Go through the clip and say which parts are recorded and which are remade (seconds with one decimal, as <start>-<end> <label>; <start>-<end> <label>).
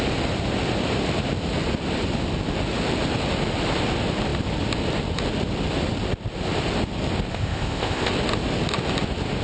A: 0.0-7.3 recorded; 7.3-8.1 remade; 8.1-9.4 recorded